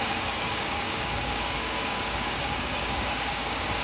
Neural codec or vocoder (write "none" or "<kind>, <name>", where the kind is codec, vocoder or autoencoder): codec, DAC